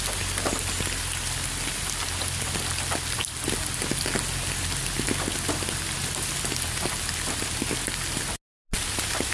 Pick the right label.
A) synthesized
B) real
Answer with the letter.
B